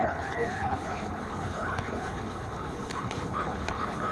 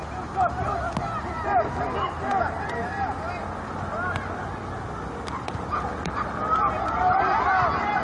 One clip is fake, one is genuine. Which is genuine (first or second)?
second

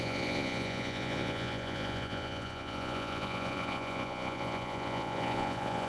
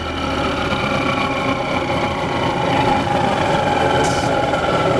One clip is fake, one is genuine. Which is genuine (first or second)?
second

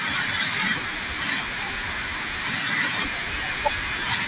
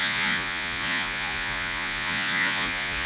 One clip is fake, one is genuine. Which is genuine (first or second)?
first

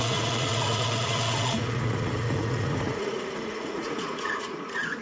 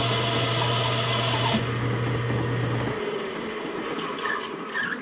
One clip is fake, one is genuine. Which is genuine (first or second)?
second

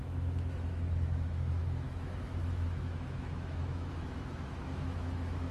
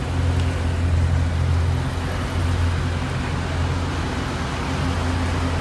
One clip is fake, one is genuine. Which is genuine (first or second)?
second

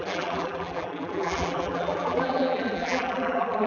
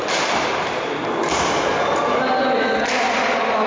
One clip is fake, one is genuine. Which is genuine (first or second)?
second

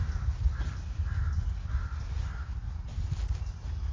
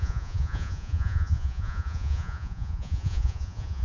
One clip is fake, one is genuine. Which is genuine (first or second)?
first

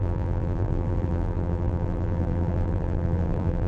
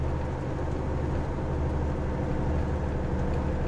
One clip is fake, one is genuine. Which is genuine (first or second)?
second